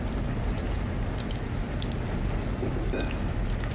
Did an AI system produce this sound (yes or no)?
no